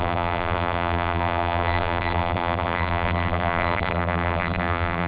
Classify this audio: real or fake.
fake